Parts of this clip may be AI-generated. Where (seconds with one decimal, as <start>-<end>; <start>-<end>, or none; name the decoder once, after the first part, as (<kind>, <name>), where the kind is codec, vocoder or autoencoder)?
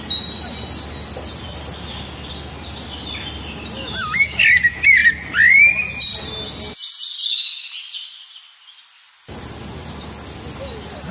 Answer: none